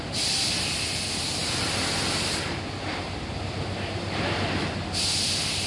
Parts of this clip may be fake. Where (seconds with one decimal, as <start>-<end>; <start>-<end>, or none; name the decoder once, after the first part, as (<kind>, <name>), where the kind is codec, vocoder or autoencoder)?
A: none